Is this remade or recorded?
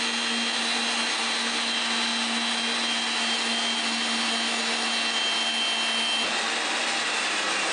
recorded